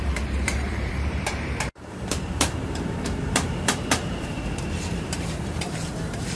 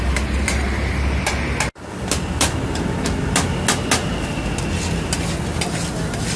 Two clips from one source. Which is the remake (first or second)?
first